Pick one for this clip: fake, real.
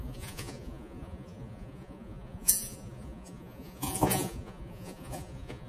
fake